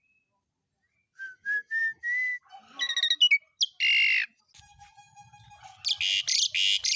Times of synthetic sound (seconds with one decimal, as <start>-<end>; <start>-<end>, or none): none